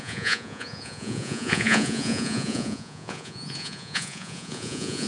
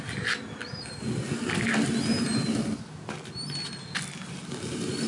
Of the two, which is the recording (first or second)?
second